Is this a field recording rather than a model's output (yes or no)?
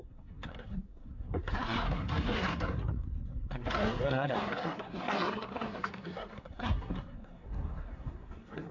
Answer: no